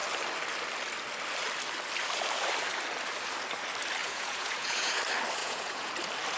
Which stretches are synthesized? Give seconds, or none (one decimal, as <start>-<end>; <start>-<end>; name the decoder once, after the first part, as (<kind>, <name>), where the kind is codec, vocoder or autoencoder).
4.0-5.0 (vocoder, Vocos); 5.4-5.9